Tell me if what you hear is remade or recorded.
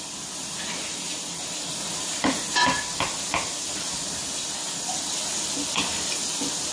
recorded